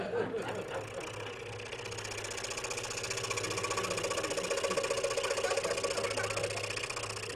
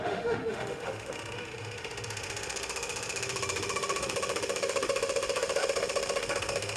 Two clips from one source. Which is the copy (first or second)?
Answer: second